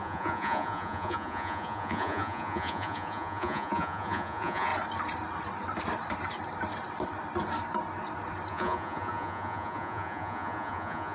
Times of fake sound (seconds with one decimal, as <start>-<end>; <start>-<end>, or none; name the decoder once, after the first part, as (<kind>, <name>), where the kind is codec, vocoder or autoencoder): 0.0-4.7 (vocoder, Vocos); 8.5-11.1